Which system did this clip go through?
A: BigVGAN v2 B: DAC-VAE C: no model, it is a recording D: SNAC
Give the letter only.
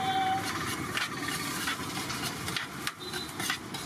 C